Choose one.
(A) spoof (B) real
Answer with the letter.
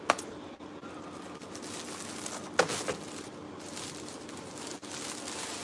B